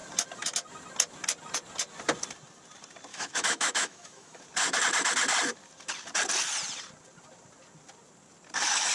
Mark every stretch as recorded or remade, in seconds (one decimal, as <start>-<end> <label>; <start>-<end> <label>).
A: 0.0-3.1 recorded; 3.1-4.4 remade; 4.4-8.9 recorded

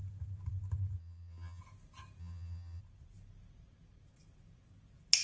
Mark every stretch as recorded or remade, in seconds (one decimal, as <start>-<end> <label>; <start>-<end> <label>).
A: 0.0-1.0 recorded; 1.0-1.6 remade; 1.6-2.2 recorded; 2.2-2.8 remade; 2.8-5.2 recorded